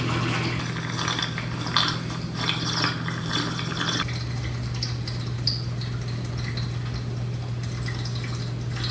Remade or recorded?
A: recorded